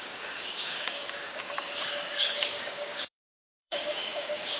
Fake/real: fake